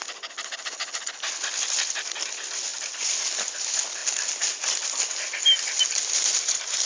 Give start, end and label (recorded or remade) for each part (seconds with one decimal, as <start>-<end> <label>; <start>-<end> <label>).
0.0-2.7 recorded; 2.7-3.3 remade; 3.3-6.9 recorded